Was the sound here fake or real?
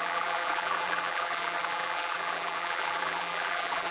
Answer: fake